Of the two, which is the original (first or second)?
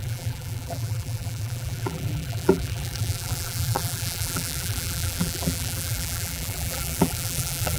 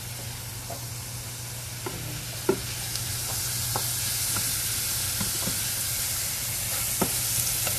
second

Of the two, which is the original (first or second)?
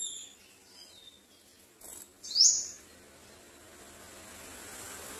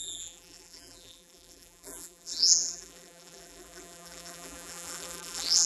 first